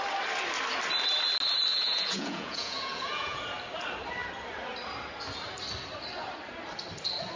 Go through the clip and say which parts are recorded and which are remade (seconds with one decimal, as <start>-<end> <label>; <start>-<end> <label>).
0.0-1.7 recorded; 1.7-3.4 remade; 3.4-7.4 recorded